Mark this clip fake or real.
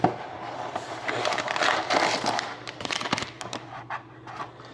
real